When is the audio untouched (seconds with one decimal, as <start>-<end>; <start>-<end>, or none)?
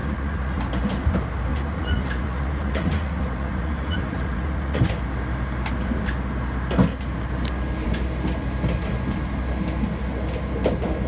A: 0.6-1.5; 4.8-11.1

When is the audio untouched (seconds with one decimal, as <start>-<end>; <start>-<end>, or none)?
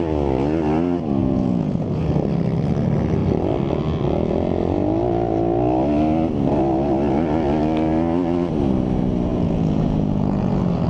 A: 0.0-1.2; 2.1-9.3; 10.5-10.9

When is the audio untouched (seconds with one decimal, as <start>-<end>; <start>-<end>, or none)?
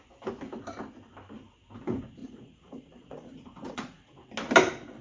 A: 0.0-2.2; 4.2-5.0